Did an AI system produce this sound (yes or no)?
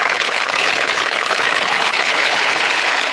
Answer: yes